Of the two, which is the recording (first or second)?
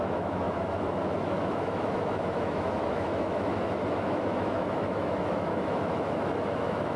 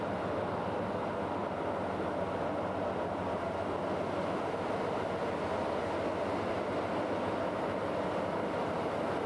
second